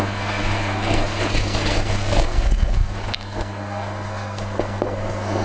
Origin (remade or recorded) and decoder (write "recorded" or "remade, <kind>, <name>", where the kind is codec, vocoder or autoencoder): remade, codec, SNAC